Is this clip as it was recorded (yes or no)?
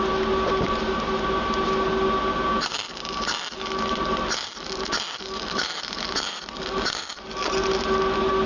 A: yes